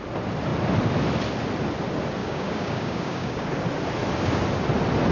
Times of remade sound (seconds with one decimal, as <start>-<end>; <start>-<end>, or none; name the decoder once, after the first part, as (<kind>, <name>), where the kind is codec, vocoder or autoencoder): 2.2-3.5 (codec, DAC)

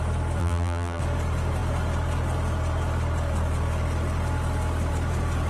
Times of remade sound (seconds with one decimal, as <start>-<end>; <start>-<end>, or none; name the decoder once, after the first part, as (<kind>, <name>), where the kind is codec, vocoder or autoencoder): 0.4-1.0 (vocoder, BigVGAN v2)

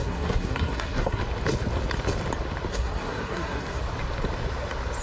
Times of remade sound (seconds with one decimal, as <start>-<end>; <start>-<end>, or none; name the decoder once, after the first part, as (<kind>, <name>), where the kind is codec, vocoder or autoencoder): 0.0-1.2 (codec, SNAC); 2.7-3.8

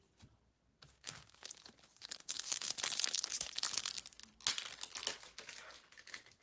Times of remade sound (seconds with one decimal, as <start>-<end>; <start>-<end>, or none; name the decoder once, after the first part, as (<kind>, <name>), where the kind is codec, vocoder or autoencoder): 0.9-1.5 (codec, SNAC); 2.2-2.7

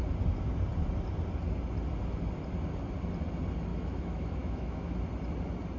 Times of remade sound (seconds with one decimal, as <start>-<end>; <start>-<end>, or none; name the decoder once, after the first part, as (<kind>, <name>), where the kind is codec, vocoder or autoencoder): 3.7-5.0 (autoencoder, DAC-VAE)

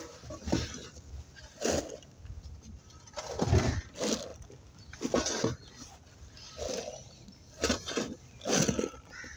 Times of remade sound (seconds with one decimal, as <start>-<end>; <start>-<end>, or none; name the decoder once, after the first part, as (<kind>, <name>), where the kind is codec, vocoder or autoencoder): 7.0-8.5 (vocoder, BigVGAN v2)